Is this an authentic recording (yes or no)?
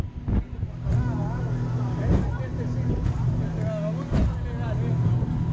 yes